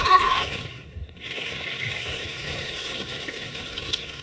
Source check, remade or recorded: remade